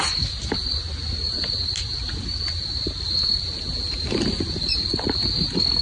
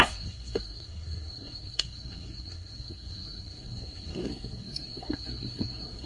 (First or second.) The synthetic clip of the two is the second